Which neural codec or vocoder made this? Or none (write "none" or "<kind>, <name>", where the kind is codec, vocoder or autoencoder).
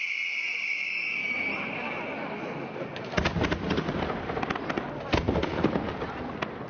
none